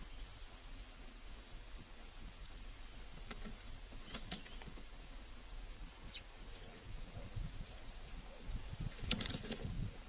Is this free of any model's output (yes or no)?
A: no